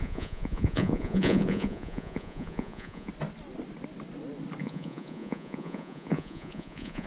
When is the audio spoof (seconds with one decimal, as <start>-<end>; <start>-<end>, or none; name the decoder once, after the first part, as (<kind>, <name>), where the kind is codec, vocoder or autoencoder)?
0.0-3.1 (vocoder, Vocos); 4.6-7.1